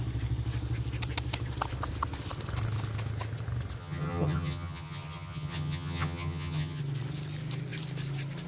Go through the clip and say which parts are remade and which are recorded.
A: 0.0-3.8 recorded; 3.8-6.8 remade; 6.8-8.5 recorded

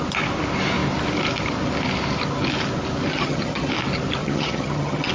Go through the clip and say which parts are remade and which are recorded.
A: 0.0-3.1 recorded; 3.1-3.7 remade; 3.7-4.2 recorded; 4.2-5.1 remade